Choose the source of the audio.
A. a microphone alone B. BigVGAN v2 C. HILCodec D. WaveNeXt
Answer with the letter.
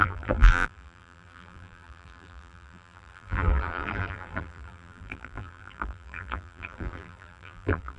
B